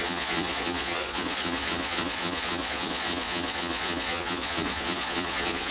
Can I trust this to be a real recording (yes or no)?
no